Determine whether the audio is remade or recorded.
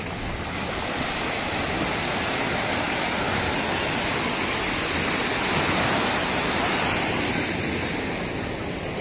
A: recorded